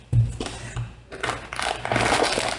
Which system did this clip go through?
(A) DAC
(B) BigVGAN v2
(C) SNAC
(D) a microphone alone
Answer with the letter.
D